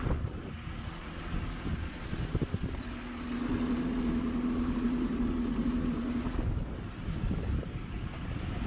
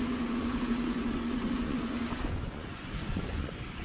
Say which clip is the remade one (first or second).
second